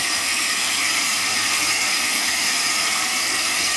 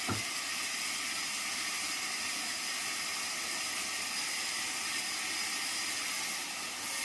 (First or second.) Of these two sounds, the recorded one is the second